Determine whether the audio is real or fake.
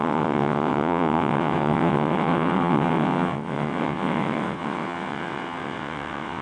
fake